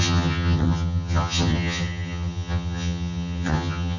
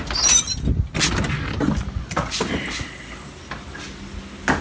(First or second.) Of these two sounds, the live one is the second